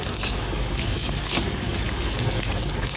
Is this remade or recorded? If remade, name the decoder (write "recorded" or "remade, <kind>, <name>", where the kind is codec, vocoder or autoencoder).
remade, codec, DAC